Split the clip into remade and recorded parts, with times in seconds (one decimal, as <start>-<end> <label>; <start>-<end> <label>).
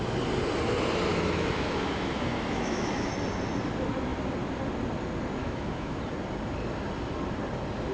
0.0-1.1 recorded; 1.1-3.1 remade; 3.1-5.4 recorded; 5.4-6.0 remade; 6.0-7.9 recorded